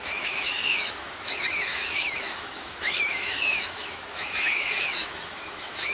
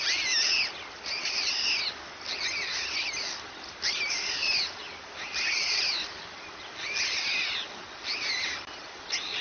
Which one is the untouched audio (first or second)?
second